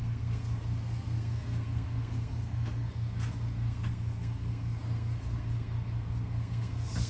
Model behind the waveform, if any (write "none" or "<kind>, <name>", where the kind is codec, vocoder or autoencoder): codec, SNAC